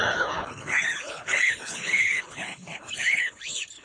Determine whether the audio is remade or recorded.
remade